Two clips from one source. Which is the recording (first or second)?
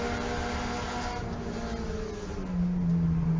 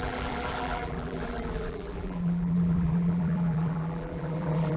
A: first